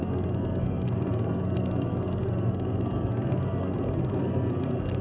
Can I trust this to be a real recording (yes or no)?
no